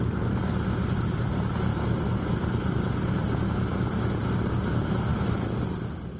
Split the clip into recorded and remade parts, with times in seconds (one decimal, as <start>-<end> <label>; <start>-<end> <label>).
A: 0.0-6.2 recorded